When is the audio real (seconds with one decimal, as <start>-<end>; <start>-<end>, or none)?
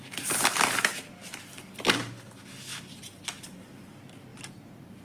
0.0-2.7; 3.9-4.3